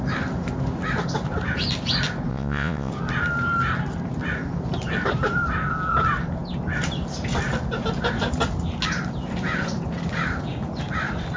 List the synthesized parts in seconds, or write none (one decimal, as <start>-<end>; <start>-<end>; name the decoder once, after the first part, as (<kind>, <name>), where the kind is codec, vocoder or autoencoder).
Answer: 2.3-2.9 (vocoder, Vocos)